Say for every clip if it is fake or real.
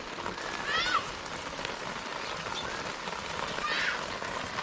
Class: real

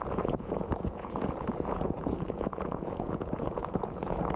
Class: fake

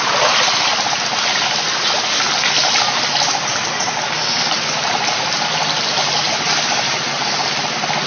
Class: real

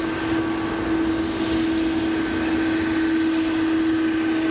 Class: real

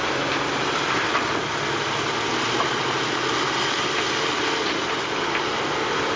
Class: real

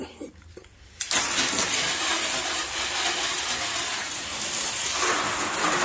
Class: real